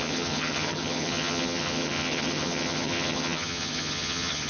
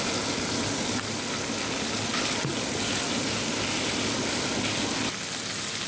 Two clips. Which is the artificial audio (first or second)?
first